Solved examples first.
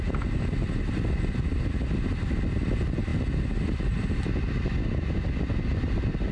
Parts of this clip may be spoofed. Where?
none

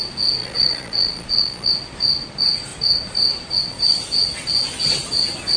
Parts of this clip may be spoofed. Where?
0.4-1.7 (vocoder, Vocos)

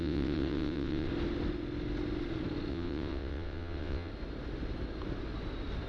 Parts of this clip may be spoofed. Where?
0.0-1.1 (vocoder, WaveNeXt); 2.7-4.1

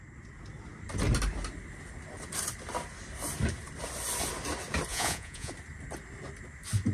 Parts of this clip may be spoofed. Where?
4.9-5.5 (vocoder, Vocos)